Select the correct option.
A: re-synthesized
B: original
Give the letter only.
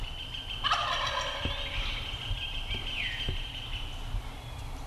B